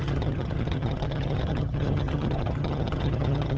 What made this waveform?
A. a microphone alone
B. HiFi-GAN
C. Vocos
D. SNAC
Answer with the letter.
B